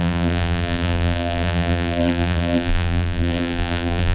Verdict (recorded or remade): remade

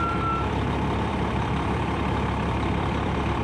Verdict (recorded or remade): remade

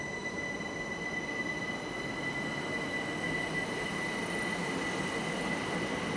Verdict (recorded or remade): recorded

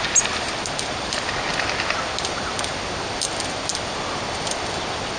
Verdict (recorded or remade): recorded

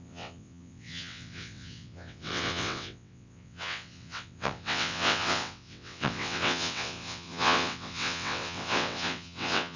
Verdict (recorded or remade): remade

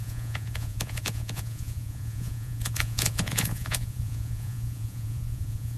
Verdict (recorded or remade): remade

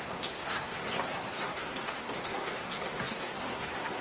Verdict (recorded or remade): remade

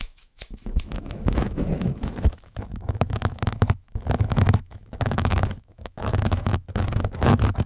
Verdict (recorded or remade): remade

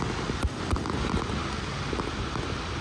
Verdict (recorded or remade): recorded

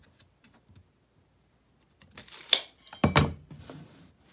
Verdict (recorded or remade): recorded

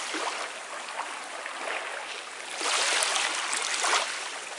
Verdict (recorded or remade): recorded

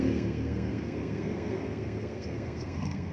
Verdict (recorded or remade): remade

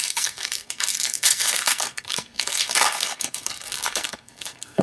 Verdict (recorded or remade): remade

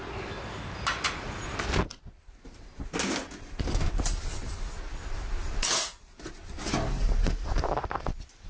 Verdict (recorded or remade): recorded